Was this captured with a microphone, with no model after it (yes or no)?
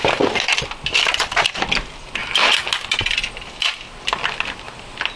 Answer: yes